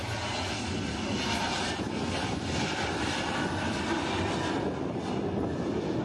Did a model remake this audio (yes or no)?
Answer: no